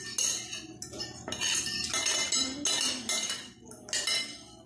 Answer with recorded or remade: recorded